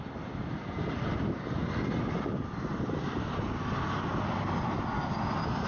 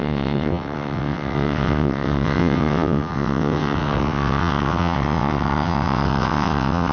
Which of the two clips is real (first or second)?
first